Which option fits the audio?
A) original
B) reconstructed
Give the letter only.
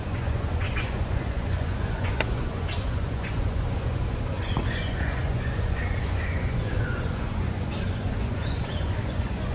B